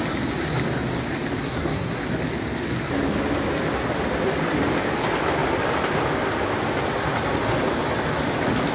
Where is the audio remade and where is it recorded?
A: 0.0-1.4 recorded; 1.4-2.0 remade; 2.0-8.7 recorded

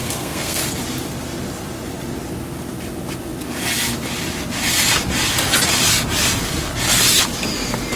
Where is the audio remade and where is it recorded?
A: 0.0-0.6 remade; 0.6-8.0 recorded

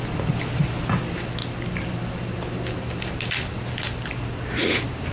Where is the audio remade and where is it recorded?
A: 0.0-5.1 recorded